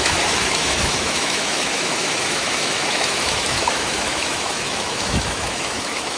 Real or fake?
fake